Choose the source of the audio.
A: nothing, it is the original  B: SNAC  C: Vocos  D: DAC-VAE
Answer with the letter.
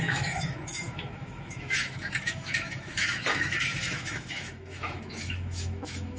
D